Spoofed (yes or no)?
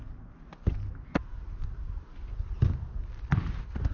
no